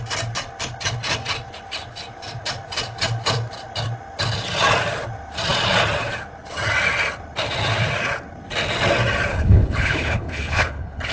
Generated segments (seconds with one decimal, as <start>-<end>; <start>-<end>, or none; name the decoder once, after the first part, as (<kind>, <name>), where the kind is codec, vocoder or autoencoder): 9.3-11.1 (codec, HILCodec)